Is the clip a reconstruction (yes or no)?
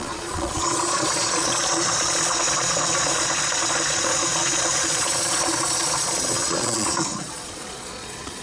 yes